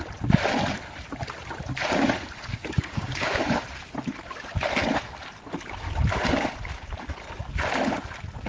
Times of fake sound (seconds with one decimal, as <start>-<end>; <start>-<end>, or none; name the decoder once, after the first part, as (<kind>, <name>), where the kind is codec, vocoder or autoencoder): 2.5-3.4 (codec, DAC)